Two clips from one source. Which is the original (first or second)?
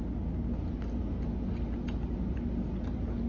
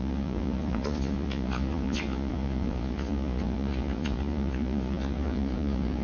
first